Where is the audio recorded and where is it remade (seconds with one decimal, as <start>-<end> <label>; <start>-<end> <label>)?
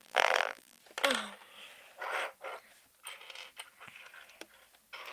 0.0-0.8 remade; 0.8-5.1 recorded